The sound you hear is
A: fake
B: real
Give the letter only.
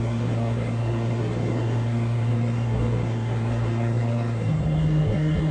A